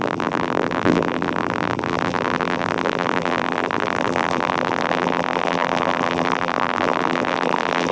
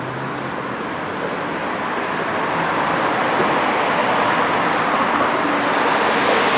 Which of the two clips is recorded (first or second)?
second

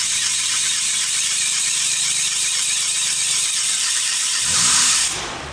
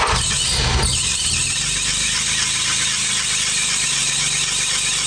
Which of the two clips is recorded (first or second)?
second